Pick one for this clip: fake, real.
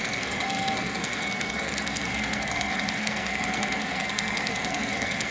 fake